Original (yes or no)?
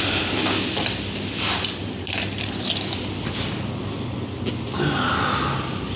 yes